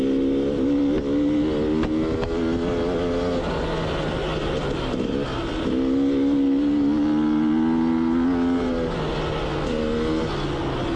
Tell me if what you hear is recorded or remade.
recorded